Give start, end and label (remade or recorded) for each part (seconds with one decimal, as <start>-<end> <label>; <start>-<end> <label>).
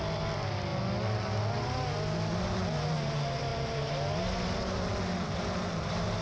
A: 0.0-6.2 recorded